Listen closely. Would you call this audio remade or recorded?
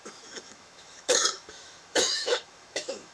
remade